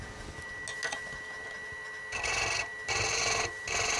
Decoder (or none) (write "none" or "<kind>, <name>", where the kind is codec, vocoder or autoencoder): none